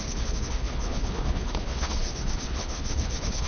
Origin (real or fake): fake